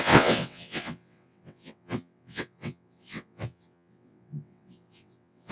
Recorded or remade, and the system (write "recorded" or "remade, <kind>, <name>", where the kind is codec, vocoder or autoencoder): remade, vocoder, WaveNeXt